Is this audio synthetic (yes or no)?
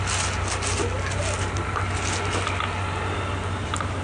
no